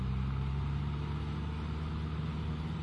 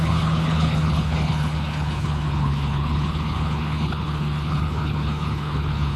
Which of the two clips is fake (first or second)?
second